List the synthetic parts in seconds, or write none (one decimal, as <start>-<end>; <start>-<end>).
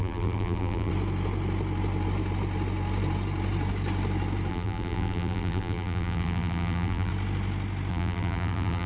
0.0-0.9; 4.5-7.1; 7.9-8.9